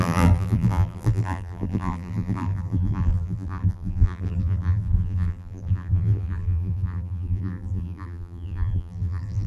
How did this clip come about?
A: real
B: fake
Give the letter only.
B